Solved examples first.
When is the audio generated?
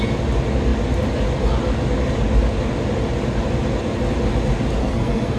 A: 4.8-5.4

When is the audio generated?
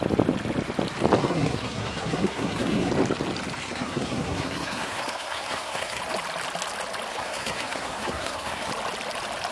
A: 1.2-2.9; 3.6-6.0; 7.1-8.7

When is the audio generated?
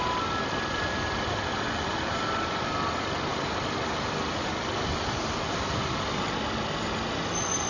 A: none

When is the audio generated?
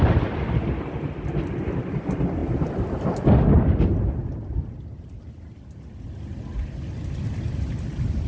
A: none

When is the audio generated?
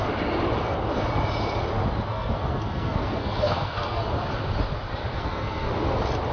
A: 2.1-4.0; 5.1-5.7